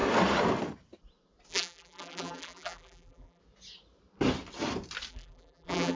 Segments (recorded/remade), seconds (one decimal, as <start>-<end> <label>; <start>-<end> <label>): 0.0-1.5 recorded; 1.5-3.4 remade; 3.4-5.1 recorded; 5.1-6.0 remade

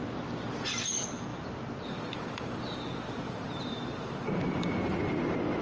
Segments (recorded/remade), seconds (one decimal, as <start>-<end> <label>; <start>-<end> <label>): 0.0-0.9 remade; 0.9-1.3 recorded; 1.3-4.7 remade; 4.7-5.6 recorded

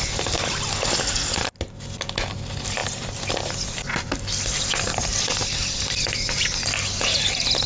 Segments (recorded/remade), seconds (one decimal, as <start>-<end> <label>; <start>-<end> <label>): 0.0-2.8 recorded; 2.8-3.3 remade; 3.3-5.1 recorded; 5.1-5.8 remade; 5.8-7.7 recorded

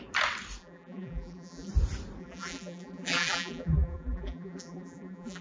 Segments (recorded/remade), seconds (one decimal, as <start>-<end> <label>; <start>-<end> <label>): 0.0-0.6 recorded; 0.6-1.7 remade; 1.7-2.2 recorded; 2.2-5.4 remade

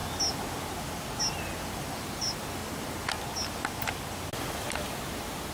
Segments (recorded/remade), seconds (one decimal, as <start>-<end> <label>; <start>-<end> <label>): 0.0-2.0 recorded; 2.0-2.6 remade; 2.6-4.6 recorded; 4.6-5.5 remade

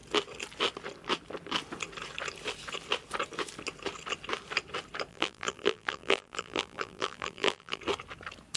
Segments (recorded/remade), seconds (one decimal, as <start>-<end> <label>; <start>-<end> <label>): 0.0-5.1 recorded; 5.1-7.8 remade; 7.8-8.6 recorded